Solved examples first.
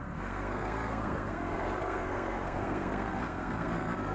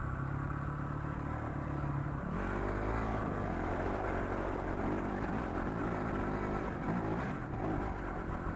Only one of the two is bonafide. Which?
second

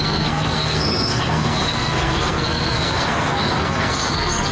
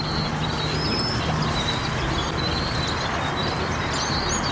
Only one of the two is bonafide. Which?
second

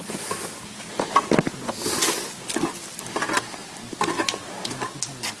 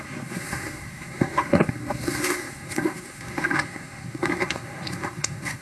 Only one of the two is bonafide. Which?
first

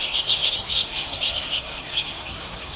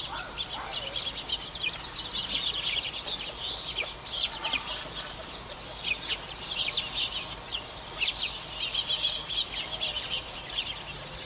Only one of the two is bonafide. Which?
second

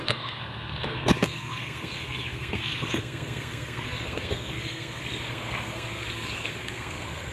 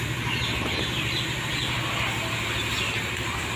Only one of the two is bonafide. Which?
second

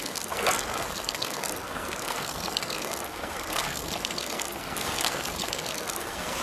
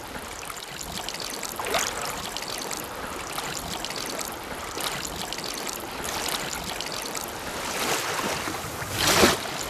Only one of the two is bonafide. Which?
second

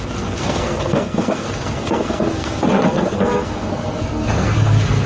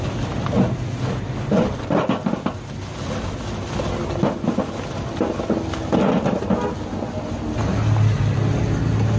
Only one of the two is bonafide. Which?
second